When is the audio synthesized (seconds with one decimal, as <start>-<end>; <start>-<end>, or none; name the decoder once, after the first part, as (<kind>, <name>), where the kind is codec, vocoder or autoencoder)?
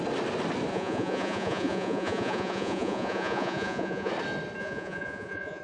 0.7-4.1 (vocoder, Vocos); 4.6-5.6